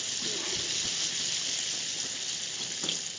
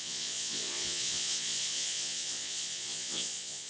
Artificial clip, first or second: second